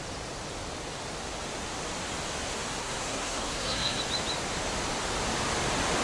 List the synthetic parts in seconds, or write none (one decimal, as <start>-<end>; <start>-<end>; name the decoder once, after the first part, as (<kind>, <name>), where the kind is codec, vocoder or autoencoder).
2.8-4.0 (codec, SNAC)